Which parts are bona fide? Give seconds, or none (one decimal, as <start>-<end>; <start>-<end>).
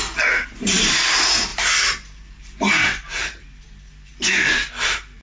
4.1-4.8